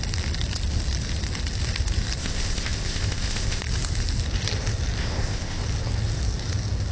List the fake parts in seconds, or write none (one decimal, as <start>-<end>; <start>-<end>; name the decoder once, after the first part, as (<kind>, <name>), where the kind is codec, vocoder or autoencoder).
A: 2.2-3.6 (codec, ZipCodec); 5.0-5.6